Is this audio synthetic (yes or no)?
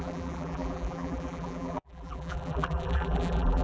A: yes